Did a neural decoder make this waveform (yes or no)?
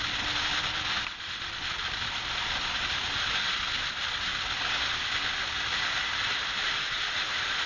no